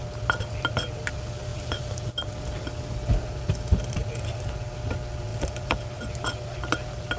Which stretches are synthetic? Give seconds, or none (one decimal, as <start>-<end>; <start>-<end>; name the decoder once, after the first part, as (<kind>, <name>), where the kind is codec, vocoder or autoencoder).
none